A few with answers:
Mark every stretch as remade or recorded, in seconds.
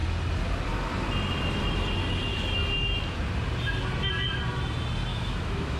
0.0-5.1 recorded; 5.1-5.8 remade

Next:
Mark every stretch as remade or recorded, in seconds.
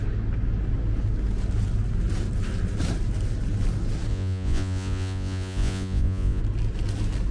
0.0-4.1 recorded; 4.1-6.4 remade; 6.4-7.3 recorded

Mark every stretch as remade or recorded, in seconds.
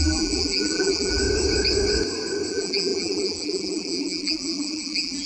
0.0-1.2 remade; 1.2-2.5 recorded; 2.5-5.3 remade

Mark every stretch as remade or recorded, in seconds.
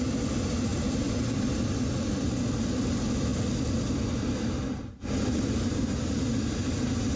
0.0-7.2 recorded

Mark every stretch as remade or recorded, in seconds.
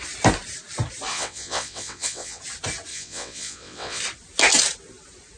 0.0-1.1 recorded; 1.1-2.4 remade; 2.4-2.9 recorded; 2.9-4.0 remade; 4.0-5.4 recorded